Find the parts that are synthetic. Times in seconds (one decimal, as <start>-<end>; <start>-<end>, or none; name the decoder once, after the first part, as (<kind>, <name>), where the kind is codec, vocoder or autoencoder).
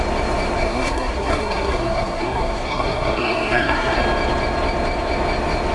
0.6-4.0 (codec, SNAC)